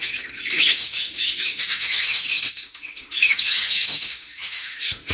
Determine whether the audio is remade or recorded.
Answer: remade